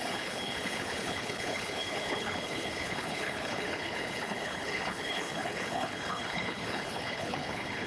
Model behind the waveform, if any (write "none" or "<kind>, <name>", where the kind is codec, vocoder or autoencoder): codec, HILCodec